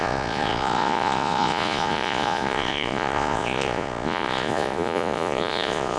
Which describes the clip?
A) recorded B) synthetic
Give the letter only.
B